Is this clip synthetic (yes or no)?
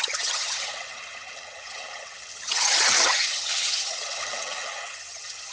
yes